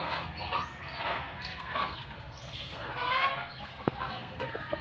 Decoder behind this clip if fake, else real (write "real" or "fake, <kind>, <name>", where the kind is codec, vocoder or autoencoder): fake, codec, SNAC